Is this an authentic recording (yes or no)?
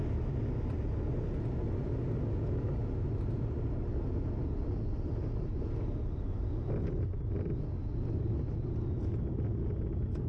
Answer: yes